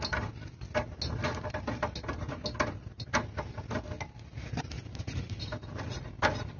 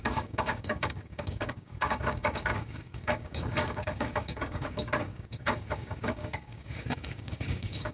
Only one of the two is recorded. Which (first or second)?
first